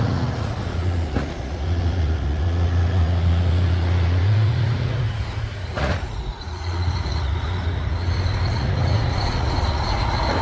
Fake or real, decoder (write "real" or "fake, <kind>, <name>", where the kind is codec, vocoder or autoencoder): fake, vocoder, Vocos